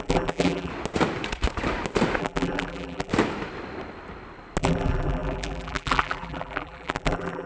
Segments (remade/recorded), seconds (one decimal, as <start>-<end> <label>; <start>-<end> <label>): 0.0-0.7 remade; 0.7-2.2 recorded; 2.2-3.1 remade; 3.1-4.6 recorded; 4.6-7.5 remade